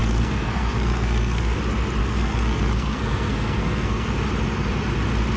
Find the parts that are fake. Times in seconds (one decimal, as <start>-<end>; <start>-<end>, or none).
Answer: 0.0-1.6; 2.0-4.2